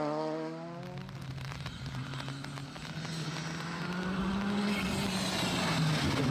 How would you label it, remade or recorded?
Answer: recorded